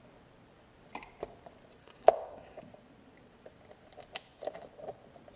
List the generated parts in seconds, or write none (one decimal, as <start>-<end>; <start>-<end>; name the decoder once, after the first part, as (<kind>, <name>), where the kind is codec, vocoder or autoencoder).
1.8-2.6 (codec, DAC)